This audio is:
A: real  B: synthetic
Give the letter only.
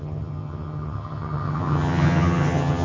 B